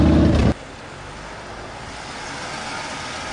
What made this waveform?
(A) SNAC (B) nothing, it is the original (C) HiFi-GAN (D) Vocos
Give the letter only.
B